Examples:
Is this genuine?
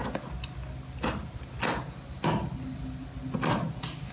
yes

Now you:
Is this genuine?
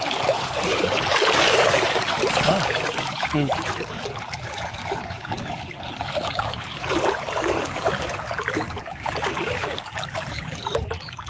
no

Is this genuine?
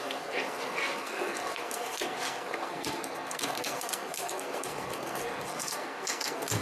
no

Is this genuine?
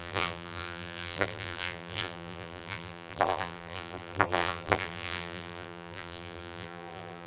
no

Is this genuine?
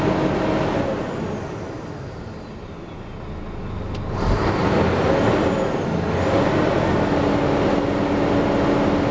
yes